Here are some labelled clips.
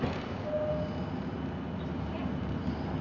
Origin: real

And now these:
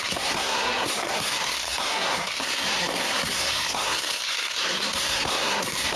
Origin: fake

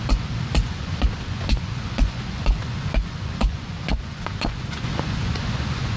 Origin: fake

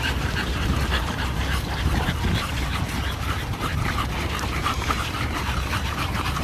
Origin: fake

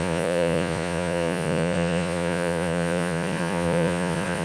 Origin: fake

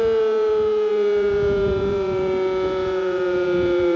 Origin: fake